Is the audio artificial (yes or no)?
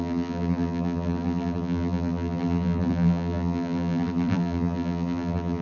yes